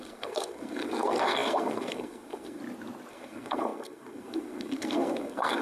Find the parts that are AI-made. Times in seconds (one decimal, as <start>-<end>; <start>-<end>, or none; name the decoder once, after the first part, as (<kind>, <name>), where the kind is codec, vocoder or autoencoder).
0.0-2.6 (codec, SNAC); 3.1-5.6